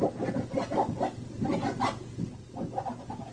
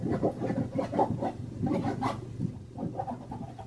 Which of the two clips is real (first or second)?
first